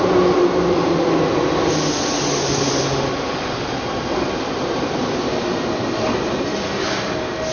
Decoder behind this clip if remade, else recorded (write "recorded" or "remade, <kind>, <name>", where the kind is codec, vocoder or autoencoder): recorded